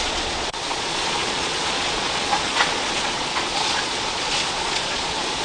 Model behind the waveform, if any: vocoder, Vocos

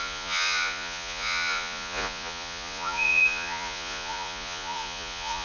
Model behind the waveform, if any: vocoder, Vocos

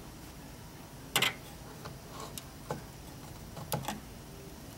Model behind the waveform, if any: none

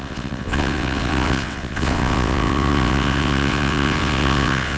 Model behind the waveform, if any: vocoder, WaveNeXt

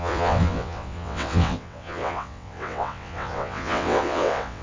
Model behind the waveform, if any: vocoder, WaveNeXt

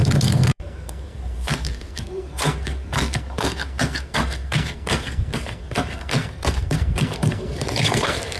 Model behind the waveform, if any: codec, SNAC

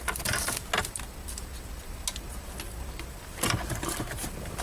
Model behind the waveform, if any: none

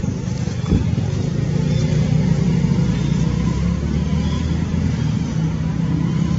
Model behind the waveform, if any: none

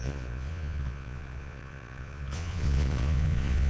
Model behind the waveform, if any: vocoder, Vocos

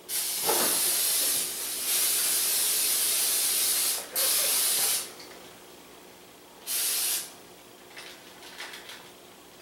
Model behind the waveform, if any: none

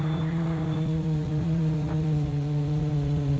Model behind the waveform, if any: vocoder, Vocos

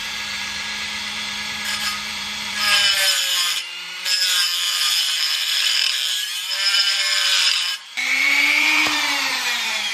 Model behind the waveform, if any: vocoder, BigVGAN v2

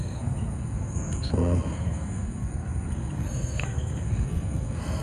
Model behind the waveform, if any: codec, SNAC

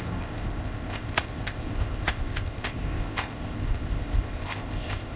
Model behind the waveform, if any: codec, ZipCodec